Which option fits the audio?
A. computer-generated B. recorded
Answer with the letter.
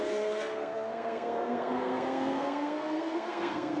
A